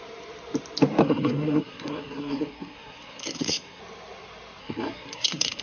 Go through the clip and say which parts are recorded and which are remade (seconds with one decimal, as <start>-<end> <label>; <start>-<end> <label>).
0.0-1.0 recorded; 1.0-3.8 remade; 3.8-4.6 recorded; 4.6-5.6 remade